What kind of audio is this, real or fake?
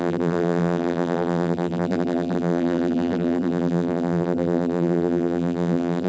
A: fake